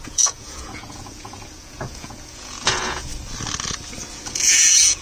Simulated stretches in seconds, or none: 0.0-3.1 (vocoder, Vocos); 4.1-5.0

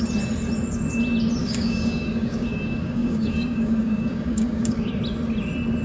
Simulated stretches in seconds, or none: 1.4-4.9 (codec, DAC)

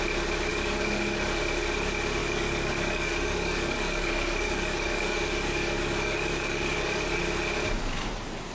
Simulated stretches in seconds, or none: 0.5-1.4 (codec, DAC); 2.2-7.2

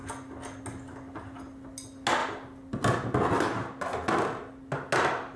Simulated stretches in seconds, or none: none